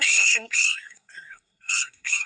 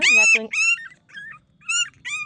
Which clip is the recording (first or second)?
second